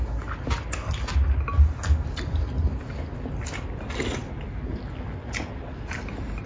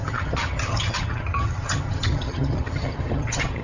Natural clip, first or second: first